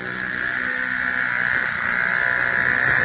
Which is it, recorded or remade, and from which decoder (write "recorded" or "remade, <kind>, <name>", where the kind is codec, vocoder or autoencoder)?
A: recorded